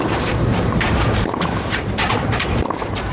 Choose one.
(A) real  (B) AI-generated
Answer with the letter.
B